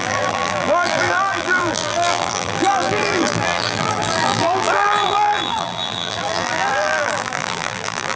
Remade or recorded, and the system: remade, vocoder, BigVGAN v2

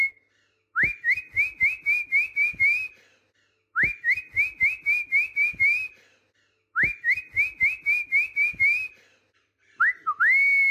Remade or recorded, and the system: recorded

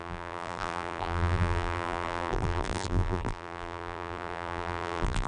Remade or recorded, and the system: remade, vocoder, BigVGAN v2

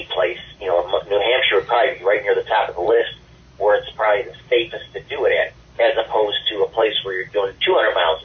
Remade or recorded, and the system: remade, vocoder, BigVGAN v2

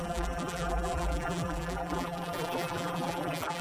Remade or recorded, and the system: remade, vocoder, BigVGAN v2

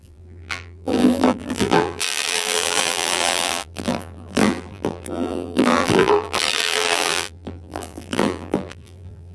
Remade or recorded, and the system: remade, vocoder, BigVGAN v2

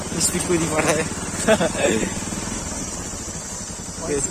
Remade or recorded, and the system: recorded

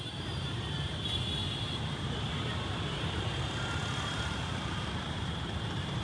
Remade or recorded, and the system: remade, vocoder, BigVGAN v2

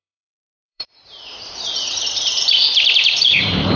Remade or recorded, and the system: remade, vocoder, BigVGAN v2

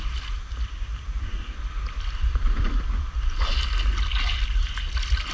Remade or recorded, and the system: recorded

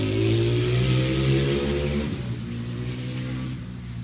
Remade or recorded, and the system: recorded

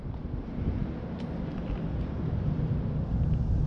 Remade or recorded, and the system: remade, vocoder, BigVGAN v2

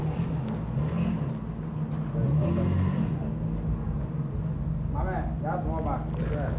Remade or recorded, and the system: recorded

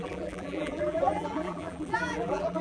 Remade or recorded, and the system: remade, vocoder, BigVGAN v2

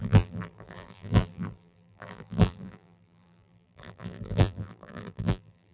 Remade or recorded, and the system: remade, vocoder, BigVGAN v2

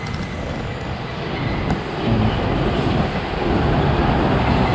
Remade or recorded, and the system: recorded